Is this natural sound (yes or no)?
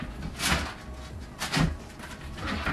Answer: yes